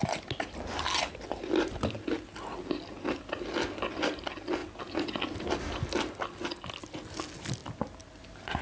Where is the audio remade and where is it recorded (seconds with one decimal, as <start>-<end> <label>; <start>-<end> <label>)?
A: 0.0-8.6 recorded